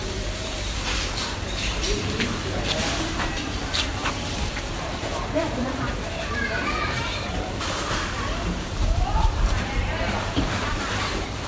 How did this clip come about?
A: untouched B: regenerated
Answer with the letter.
B